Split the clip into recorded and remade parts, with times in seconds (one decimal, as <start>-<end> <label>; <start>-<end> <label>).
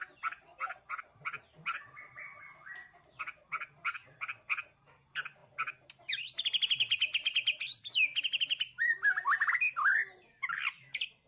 0.0-11.3 recorded